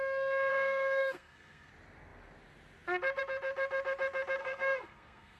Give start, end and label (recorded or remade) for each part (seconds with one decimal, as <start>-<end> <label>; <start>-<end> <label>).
0.0-0.5 recorded; 0.5-1.7 remade; 1.7-4.4 recorded; 4.4-5.4 remade